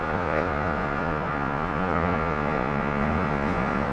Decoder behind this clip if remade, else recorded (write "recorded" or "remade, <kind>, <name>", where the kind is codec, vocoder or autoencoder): remade, vocoder, Vocos